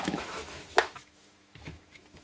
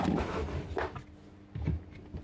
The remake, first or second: first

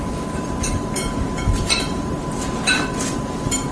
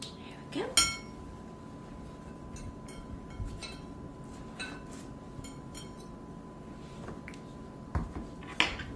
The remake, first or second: first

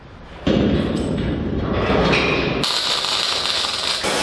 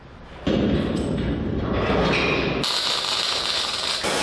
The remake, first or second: first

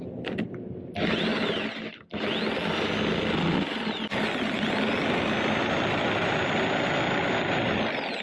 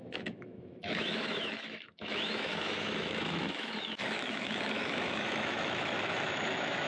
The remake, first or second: second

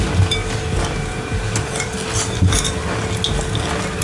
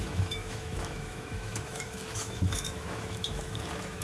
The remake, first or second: second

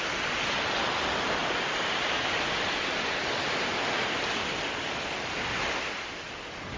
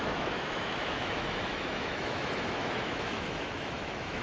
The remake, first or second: second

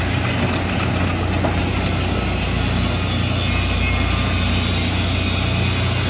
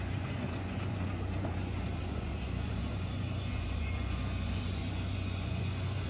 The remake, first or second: second